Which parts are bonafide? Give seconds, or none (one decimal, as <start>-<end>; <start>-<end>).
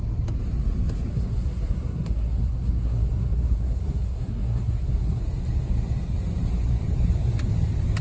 0.0-1.1; 5.2-8.0